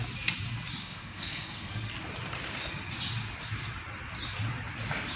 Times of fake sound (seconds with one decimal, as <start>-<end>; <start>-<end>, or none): 0.8-1.9